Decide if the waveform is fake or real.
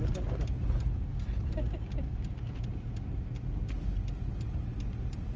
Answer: real